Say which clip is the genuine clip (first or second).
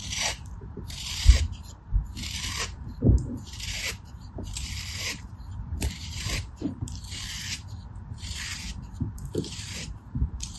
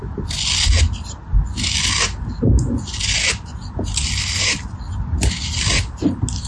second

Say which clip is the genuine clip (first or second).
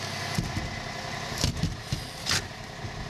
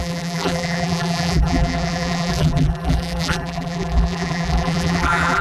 first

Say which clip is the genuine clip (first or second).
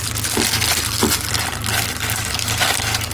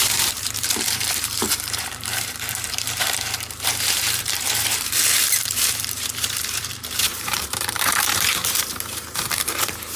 first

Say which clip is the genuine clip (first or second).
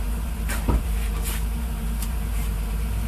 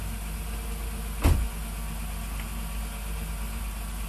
second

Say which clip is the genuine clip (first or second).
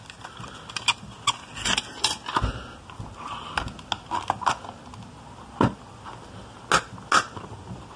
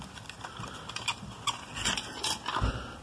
first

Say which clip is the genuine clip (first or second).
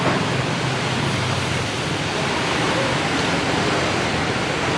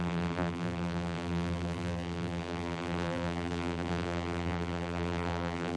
first